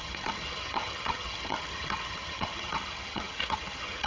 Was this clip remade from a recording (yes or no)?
yes